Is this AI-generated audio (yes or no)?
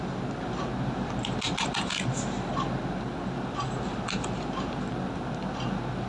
no